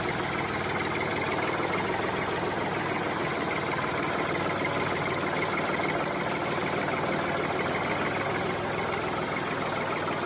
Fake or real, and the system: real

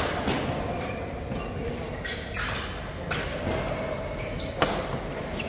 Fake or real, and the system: real